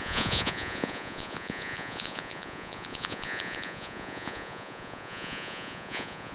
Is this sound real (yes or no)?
no